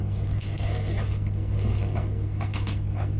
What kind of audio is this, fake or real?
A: fake